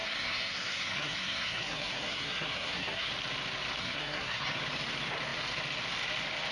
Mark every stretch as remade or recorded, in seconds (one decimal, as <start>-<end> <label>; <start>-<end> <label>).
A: 0.0-3.1 remade; 3.1-3.8 recorded; 3.8-4.6 remade; 4.6-6.5 recorded